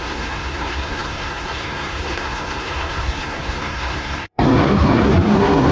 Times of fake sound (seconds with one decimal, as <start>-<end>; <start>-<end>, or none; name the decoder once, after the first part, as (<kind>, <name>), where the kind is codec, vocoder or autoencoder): 0.0-5.7 (codec, SNAC)